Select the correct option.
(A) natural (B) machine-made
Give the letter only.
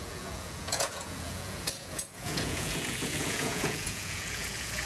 B